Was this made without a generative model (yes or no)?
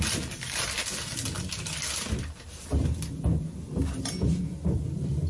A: yes